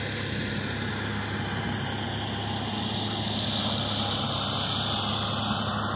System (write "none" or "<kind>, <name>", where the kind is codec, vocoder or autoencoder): none